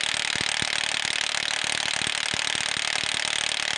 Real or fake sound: real